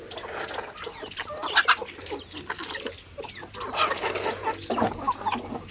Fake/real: real